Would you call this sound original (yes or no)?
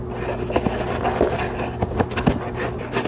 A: yes